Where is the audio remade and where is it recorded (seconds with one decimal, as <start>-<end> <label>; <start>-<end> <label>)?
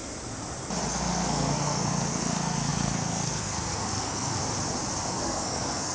0.0-0.9 recorded; 0.9-4.4 remade; 4.4-5.1 recorded; 5.1-5.9 remade